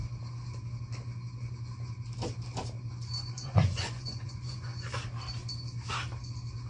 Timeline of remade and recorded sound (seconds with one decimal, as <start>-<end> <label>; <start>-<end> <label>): 0.0-3.3 recorded; 3.3-4.7 remade; 4.7-6.7 recorded